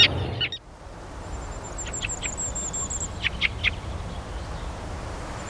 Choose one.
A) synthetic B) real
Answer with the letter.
B